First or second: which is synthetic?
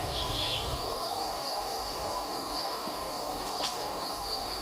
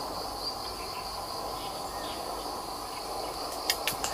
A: first